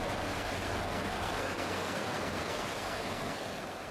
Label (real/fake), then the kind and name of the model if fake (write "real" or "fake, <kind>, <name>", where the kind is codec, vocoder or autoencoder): fake, codec, SNAC